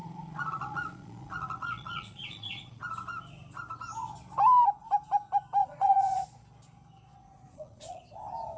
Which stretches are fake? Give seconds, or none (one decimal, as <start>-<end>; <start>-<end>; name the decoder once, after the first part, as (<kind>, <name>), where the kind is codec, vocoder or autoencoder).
0.0-2.8 (vocoder, Vocos); 5.6-6.4; 7.1-8.0